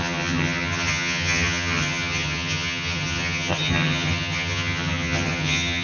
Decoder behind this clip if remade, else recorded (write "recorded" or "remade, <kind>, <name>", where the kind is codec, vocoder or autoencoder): remade, vocoder, HiFi-GAN